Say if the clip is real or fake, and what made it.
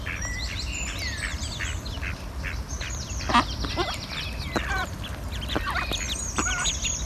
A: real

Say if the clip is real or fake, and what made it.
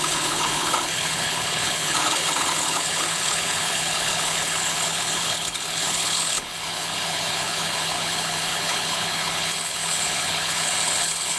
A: fake, codec, HILCodec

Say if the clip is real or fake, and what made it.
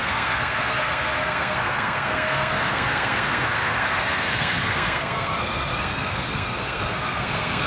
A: fake, codec, SNAC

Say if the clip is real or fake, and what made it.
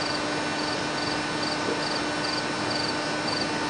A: real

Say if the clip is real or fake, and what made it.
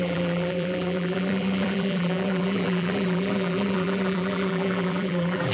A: fake, vocoder, BigVGAN v2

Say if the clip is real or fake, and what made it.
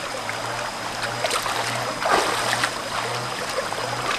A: real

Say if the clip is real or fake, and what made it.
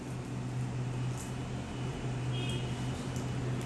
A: real